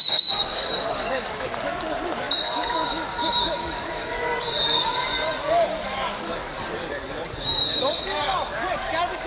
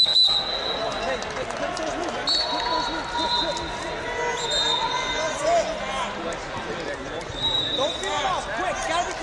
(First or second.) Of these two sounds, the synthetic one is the first